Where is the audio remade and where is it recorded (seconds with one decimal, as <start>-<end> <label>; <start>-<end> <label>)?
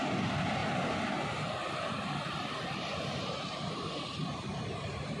0.0-5.2 remade